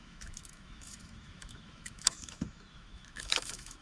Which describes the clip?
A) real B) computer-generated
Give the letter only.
B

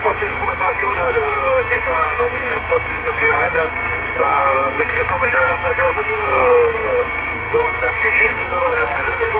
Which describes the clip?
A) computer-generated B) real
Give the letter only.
A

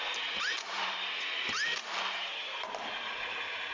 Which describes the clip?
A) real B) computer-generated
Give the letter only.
B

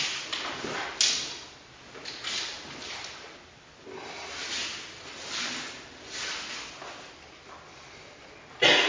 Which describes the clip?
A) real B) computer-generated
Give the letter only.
A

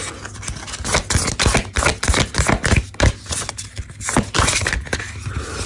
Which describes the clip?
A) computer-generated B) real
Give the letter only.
B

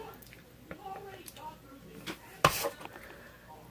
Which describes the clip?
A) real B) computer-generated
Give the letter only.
A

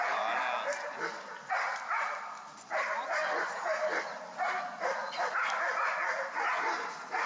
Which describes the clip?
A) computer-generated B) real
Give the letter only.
B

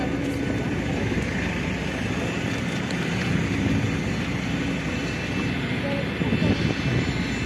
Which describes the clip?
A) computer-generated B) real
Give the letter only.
B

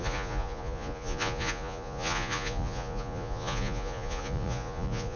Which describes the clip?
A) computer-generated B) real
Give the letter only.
A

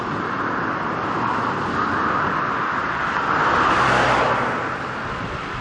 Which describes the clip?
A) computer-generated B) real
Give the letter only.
B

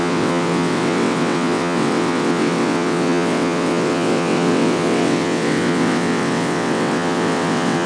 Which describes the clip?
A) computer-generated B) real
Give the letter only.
A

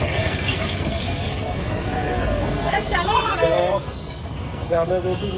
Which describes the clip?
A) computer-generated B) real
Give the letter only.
A